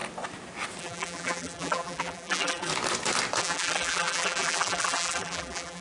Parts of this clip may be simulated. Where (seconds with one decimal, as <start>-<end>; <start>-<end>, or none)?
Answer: 0.8-2.7; 3.4-5.8